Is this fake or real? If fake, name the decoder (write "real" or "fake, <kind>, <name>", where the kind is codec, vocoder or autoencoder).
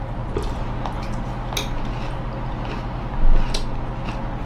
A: real